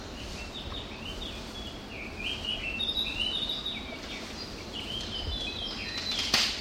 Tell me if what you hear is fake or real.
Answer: real